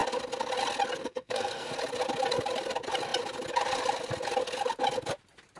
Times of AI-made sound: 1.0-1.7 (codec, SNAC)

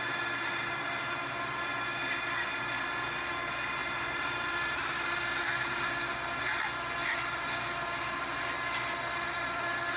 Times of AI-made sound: 3.8-5.2 (vocoder, BigVGAN v2)

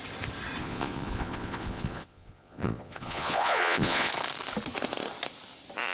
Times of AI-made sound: 0.6-4.1 (vocoder, Vocos)

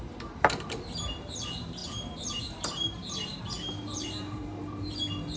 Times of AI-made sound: 0.0-5.4 (vocoder, BigVGAN v2)

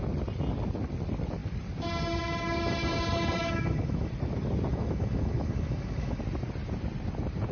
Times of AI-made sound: 3.4-4.1 (autoencoder, DAC-VAE); 4.7-6.2

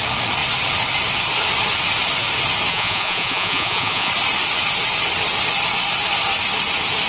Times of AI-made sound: 2.7-4.1 (vocoder, Vocos)

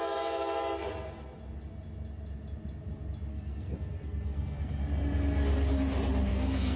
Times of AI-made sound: 3.3-4.8 (codec, SNAC); 6.3-6.8